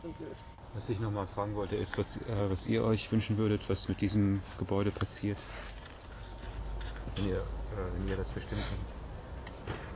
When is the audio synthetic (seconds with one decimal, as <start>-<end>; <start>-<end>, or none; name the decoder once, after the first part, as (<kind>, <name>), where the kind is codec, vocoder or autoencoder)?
none